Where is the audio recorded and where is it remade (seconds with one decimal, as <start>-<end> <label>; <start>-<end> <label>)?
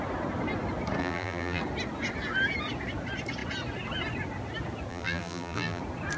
0.0-1.0 recorded; 1.0-1.6 remade; 1.6-4.9 recorded; 4.9-5.8 remade; 5.8-6.2 recorded